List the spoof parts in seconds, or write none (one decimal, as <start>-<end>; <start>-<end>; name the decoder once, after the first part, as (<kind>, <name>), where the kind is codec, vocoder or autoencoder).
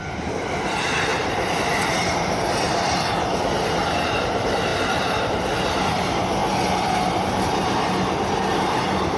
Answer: none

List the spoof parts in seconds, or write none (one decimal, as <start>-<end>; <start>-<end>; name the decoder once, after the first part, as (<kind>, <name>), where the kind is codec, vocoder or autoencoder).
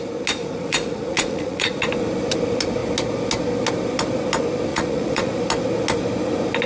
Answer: 0.4-1.9 (vocoder, Vocos); 4.7-5.3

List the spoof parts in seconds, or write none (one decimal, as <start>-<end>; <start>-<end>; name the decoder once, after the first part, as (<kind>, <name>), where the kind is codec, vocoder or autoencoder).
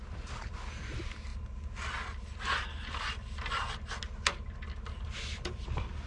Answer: none